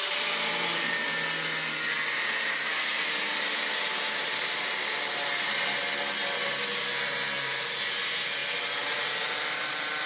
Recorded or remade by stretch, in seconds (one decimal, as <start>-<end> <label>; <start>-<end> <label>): 0.0-10.1 recorded